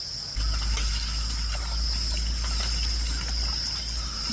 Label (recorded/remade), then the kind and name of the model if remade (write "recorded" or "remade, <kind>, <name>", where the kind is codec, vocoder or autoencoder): recorded